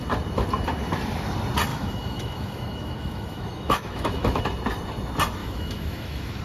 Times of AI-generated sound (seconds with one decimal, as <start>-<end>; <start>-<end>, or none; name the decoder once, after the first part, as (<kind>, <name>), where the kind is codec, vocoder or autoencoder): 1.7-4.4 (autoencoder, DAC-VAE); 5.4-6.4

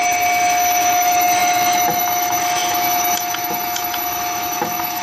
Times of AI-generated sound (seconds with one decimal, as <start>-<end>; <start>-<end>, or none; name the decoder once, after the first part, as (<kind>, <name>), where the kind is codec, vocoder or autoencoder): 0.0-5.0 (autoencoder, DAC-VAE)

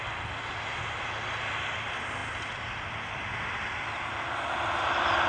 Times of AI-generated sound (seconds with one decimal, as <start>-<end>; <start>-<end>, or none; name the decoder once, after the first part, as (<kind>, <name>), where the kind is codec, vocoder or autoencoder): none

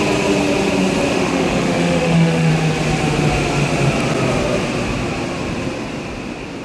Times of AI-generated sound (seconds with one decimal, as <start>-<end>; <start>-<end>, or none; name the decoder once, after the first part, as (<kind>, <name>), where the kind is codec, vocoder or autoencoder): 1.1-2.5 (autoencoder, DAC-VAE)